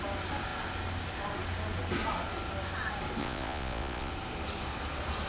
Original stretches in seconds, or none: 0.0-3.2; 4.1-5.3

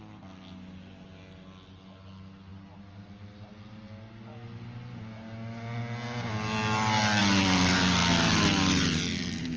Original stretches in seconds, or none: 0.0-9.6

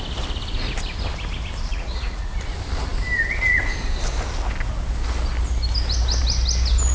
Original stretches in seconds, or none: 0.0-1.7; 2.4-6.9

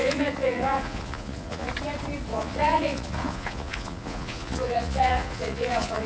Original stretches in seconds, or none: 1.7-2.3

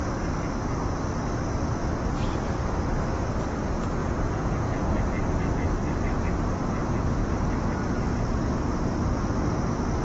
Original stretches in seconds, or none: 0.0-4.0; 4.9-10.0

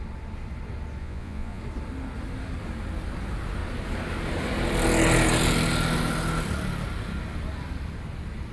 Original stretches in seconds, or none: 0.0-1.0; 1.6-8.5